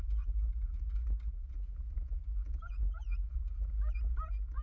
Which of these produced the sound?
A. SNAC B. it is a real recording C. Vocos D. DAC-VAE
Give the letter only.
B